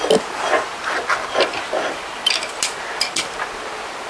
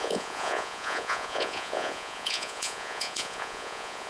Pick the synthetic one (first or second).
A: second